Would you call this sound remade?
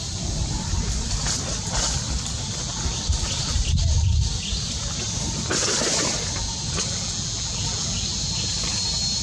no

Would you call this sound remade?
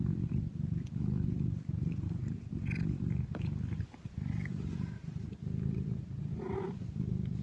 yes